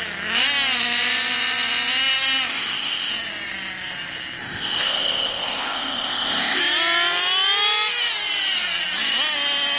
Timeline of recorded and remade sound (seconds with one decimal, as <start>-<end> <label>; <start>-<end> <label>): 0.0-2.5 recorded; 2.5-3.1 remade; 3.1-4.4 recorded; 4.4-6.6 remade; 6.6-9.8 recorded